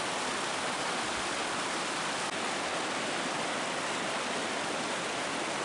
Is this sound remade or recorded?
recorded